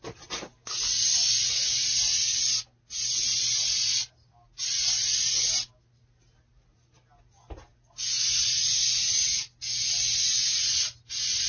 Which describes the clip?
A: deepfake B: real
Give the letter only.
B